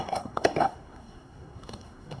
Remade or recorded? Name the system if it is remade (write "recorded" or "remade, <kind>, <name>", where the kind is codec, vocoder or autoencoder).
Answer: remade, codec, SNAC